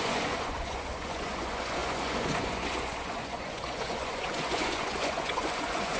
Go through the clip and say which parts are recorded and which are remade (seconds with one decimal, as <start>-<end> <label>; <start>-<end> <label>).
0.0-6.0 remade